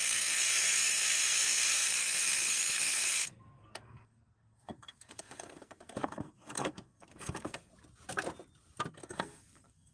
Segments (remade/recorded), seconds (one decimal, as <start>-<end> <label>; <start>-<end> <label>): 0.0-7.7 remade; 7.7-8.9 recorded; 8.9-9.9 remade